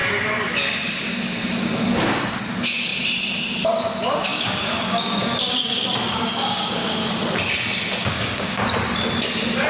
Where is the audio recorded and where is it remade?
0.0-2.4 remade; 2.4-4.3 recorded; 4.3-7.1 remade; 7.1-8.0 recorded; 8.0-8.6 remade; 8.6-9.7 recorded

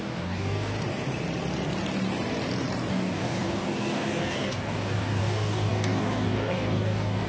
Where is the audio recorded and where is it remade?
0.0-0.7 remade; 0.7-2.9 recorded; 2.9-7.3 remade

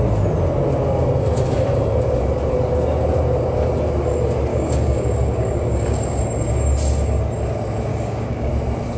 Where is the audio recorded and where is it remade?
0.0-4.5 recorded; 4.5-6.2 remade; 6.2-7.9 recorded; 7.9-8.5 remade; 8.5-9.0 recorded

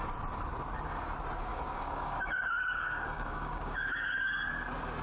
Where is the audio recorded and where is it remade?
0.0-1.5 recorded; 1.5-4.5 remade; 4.5-5.0 recorded

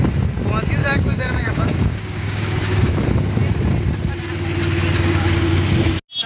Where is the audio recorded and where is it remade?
0.0-0.8 recorded; 0.8-2.9 remade; 2.9-6.3 recorded

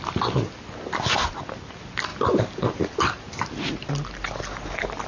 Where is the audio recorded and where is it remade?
0.0-5.1 recorded

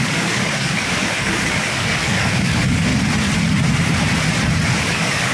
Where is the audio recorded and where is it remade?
0.0-2.9 remade; 2.9-4.7 recorded; 4.7-5.3 remade

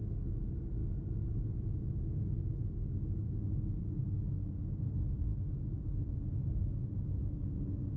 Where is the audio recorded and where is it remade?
0.0-8.0 recorded